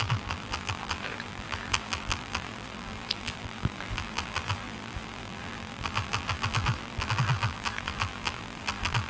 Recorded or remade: remade